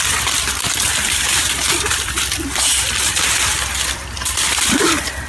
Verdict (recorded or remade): remade